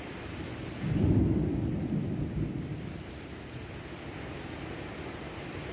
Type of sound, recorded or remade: recorded